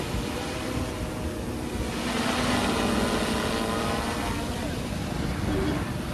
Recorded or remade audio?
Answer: recorded